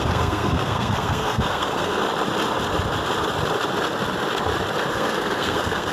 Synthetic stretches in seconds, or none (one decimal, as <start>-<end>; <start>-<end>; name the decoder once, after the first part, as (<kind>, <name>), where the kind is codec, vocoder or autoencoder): 0.0-2.0 (codec, SNAC); 4.9-5.9